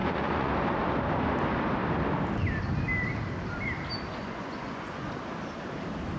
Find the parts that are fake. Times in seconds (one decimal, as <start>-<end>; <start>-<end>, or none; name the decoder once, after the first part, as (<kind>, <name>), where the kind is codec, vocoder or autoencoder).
0.0-0.5 (vocoder, Vocos); 4.2-5.1